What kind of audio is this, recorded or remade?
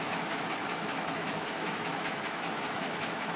remade